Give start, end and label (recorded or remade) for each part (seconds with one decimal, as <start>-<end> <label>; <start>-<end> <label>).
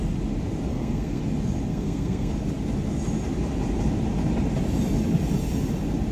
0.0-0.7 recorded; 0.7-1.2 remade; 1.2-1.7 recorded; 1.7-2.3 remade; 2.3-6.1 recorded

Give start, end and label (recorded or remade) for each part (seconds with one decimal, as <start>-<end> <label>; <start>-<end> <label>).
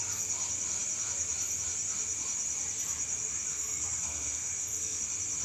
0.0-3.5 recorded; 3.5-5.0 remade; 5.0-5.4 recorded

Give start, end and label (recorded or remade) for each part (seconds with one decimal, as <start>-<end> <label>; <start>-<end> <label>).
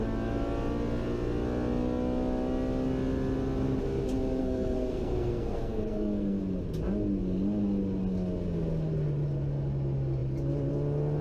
0.0-4.4 recorded; 4.4-6.4 remade; 6.4-11.2 recorded